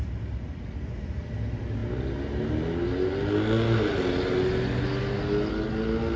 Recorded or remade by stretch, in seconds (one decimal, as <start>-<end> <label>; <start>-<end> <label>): 0.0-6.2 recorded